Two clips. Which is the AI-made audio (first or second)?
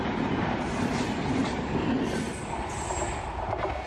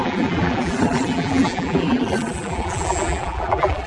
second